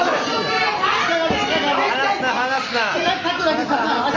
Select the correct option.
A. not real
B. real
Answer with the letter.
B